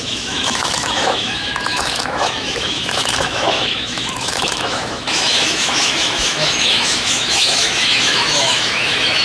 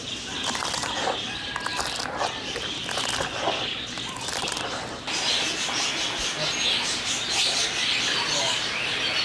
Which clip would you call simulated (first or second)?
first